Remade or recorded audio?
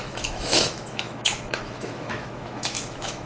remade